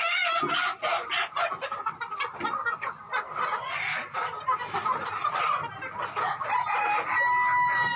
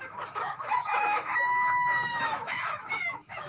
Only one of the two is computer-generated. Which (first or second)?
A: second